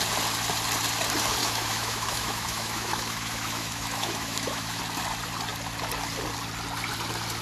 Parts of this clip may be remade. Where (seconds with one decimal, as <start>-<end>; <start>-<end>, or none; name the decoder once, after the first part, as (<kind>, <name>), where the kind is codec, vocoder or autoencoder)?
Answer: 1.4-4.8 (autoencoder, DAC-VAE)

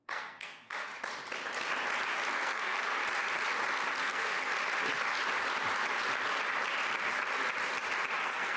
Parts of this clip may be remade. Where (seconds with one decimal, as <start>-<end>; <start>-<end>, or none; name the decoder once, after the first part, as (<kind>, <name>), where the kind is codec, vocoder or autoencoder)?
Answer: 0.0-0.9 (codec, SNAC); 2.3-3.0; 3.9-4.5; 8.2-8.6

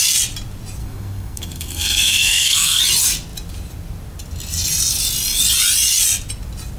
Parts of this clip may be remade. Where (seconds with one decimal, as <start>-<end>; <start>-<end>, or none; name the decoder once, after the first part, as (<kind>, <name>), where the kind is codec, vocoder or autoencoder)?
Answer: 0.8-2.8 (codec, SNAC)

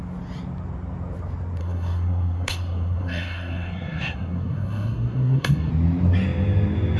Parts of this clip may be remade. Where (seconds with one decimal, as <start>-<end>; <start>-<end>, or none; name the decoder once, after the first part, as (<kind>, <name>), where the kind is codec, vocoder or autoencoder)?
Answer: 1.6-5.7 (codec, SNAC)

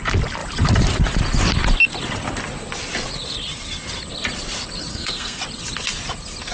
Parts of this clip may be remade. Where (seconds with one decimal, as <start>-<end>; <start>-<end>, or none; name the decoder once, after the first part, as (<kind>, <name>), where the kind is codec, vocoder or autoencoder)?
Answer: 4.9-5.4 (codec, SNAC)

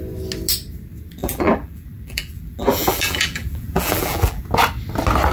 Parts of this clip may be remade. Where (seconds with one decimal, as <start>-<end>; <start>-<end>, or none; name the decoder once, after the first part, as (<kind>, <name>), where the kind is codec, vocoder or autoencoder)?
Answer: 1.2-4.4 (vocoder, BigVGAN v2)

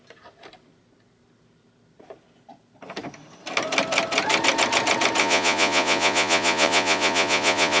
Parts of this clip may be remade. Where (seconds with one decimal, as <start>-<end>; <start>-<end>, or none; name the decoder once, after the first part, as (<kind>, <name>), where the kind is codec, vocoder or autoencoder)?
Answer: 5.2-7.8 (vocoder, Vocos)